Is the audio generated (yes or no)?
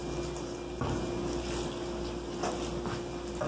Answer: no